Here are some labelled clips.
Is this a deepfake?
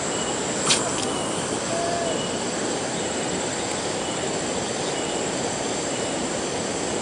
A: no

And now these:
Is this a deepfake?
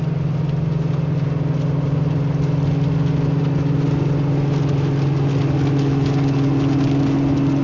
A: no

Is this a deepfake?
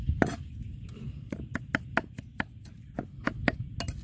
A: no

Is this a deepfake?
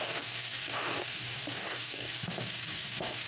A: yes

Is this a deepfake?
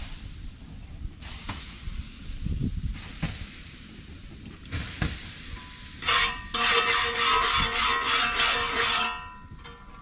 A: no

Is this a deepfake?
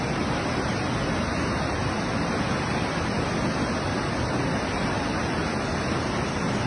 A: no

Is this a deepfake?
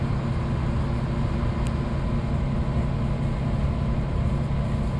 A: no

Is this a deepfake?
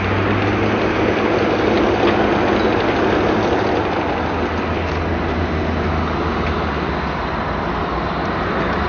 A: no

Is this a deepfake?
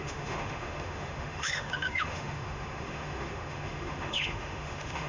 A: yes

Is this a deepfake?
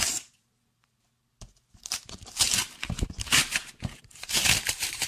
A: yes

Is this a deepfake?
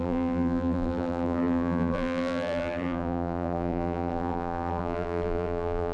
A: yes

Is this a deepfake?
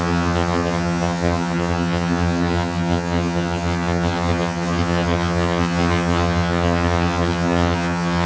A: yes